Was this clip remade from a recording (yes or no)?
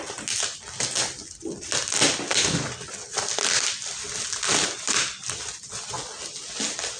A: no